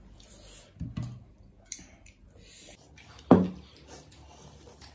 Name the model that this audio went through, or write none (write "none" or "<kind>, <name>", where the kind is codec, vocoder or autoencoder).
none